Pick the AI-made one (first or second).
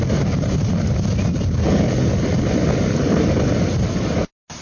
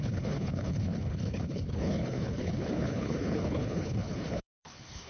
second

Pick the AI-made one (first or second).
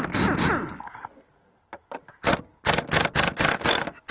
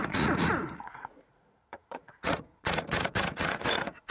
second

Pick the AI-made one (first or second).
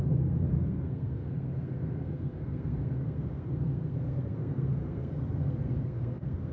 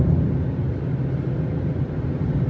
first